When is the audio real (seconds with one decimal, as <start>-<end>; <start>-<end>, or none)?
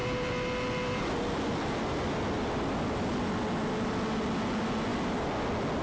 0.0-5.8